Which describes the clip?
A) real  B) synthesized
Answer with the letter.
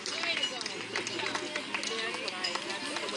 A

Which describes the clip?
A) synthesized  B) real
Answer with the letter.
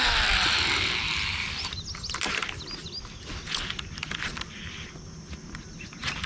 B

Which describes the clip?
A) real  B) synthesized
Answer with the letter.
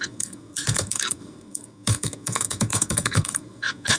B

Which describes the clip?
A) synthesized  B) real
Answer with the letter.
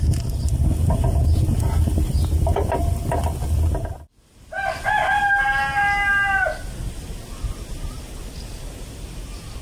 B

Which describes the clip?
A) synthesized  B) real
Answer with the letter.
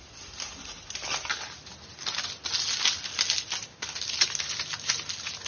B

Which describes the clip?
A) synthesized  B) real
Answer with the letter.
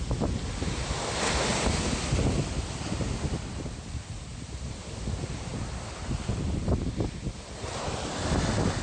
B